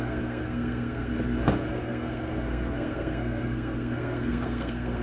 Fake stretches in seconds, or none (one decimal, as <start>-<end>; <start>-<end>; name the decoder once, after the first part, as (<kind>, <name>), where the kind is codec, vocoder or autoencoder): 0.0-1.1 (codec, SNAC); 1.7-5.0